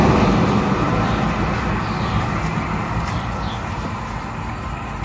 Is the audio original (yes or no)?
yes